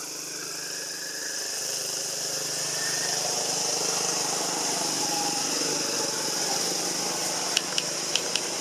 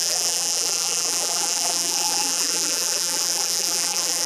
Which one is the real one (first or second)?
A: first